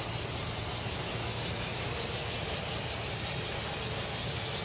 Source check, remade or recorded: recorded